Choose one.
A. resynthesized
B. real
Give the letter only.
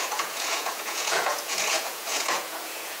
A